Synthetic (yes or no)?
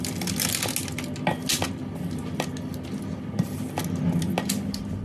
no